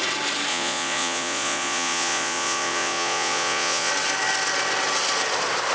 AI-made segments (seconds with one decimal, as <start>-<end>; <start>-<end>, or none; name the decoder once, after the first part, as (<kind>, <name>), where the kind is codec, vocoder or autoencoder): 0.5-3.9 (vocoder, Vocos)

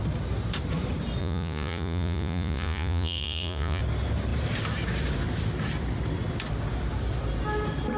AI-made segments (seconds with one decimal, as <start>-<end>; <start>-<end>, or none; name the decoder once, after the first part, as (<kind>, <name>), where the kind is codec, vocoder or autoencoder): 1.2-3.8 (vocoder, Vocos)

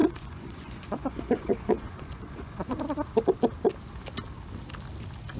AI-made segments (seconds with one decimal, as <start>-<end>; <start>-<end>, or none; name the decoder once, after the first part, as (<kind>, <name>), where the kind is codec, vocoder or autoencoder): 0.0-2.8 (vocoder, Vocos)

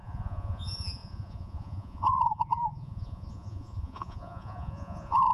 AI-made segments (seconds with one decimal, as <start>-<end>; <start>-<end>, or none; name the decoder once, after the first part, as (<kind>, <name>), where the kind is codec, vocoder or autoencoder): 0.0-5.3 (vocoder, Vocos)

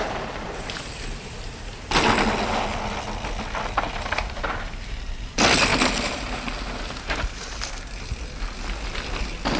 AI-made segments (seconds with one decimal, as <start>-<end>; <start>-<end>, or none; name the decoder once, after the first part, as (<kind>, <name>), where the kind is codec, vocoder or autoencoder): none

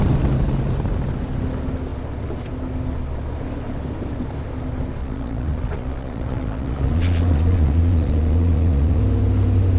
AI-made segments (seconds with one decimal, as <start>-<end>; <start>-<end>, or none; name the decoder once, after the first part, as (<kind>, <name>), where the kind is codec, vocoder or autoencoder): 5.0-9.0 (vocoder, Vocos)

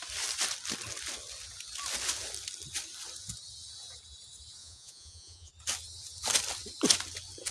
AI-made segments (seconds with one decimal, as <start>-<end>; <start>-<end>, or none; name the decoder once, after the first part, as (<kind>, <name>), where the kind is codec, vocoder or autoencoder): 4.6-5.5 (vocoder, Vocos)